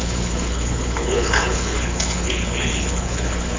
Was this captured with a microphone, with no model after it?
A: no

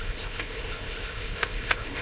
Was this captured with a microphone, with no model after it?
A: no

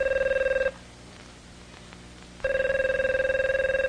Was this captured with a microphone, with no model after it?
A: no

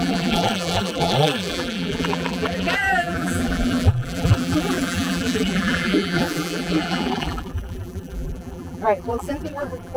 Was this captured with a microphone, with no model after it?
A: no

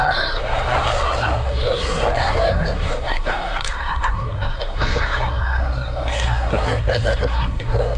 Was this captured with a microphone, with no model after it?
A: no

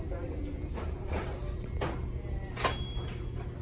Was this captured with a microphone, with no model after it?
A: yes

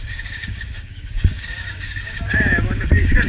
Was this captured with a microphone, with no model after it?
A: no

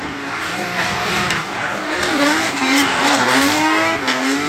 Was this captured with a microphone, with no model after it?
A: no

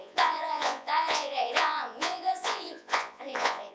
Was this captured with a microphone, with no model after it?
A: no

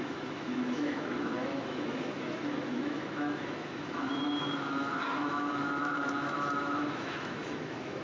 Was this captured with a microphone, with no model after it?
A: no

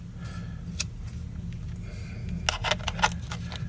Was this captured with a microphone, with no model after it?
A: yes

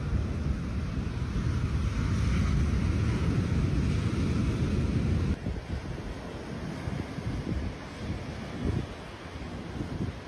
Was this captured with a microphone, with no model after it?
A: yes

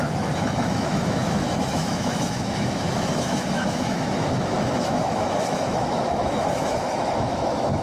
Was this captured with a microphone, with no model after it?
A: no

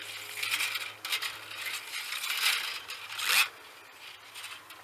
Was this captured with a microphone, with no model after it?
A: yes